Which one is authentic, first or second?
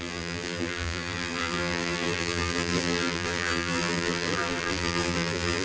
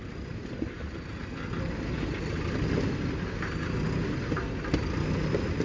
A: second